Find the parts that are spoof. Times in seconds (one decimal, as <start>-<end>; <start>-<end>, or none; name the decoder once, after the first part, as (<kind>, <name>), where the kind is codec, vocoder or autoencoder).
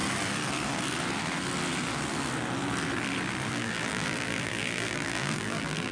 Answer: 3.5-5.9 (vocoder, BigVGAN v2)